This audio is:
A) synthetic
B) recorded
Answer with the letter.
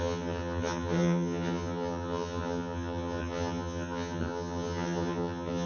A